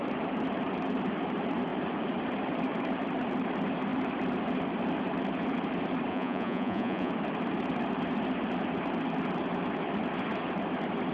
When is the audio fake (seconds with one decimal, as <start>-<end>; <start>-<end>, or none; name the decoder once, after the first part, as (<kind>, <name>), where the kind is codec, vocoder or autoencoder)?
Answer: 6.1-7.1 (vocoder, Vocos)